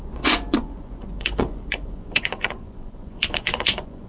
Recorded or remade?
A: remade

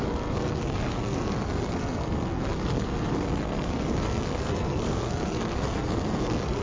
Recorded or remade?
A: remade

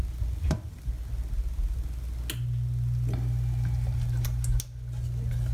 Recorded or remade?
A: recorded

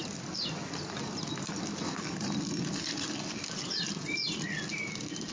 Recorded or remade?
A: remade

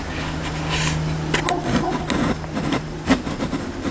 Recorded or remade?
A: recorded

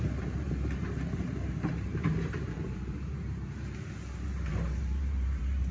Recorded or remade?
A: remade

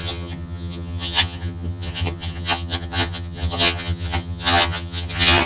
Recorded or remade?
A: remade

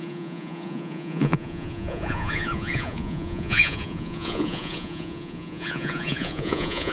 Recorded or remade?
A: remade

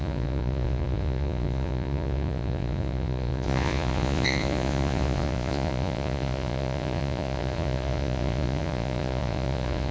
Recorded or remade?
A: remade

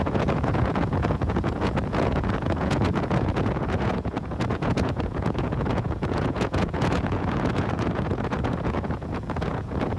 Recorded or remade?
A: remade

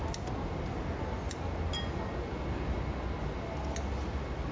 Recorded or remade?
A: recorded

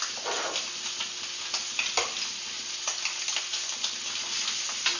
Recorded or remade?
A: recorded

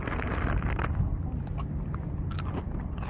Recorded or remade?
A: recorded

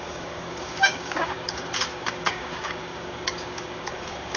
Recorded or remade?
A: remade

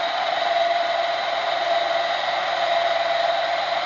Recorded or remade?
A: remade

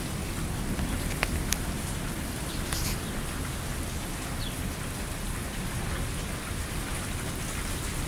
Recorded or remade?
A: recorded